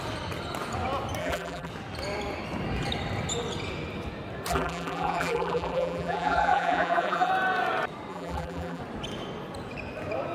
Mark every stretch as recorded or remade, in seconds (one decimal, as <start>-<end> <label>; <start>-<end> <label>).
0.0-1.2 recorded; 1.2-1.7 remade; 1.7-4.5 recorded; 4.5-7.3 remade; 7.3-8.1 recorded; 8.1-8.8 remade; 8.8-10.3 recorded